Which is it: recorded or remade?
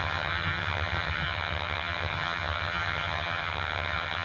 remade